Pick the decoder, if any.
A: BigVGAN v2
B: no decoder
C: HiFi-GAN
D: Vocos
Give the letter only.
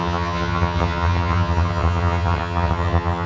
C